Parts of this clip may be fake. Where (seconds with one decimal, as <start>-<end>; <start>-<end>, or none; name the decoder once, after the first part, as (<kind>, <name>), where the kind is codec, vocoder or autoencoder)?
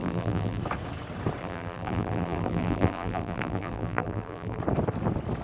0.0-0.6 (vocoder, BigVGAN v2); 1.4-4.6